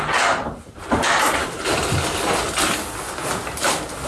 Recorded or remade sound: recorded